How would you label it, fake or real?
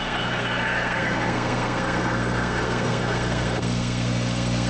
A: fake